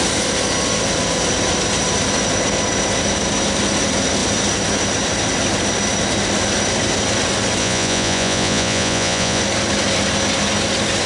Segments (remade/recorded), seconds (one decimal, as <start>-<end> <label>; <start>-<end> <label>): 0.0-7.6 recorded; 7.6-9.4 remade; 9.4-11.1 recorded